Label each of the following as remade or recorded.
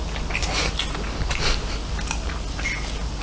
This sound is recorded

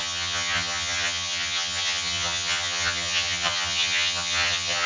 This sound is remade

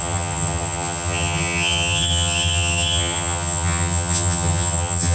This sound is remade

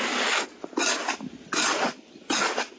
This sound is recorded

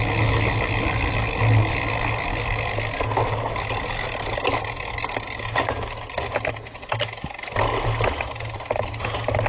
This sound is recorded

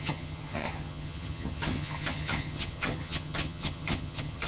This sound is remade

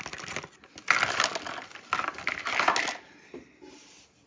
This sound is recorded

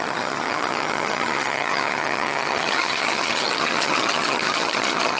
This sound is remade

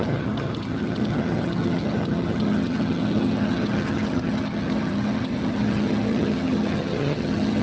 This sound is remade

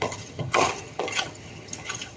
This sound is remade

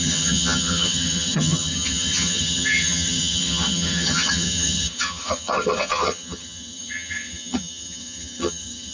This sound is remade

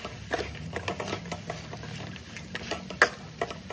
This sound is recorded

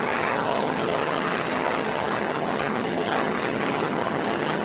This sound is remade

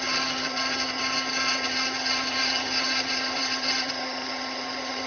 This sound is remade